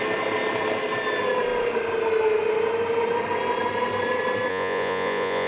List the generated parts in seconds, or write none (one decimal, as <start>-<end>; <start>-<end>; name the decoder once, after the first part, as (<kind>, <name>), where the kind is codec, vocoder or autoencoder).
4.5-5.5 (vocoder, Vocos)